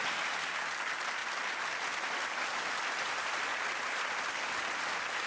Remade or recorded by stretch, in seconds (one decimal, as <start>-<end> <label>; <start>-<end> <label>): 0.0-5.3 recorded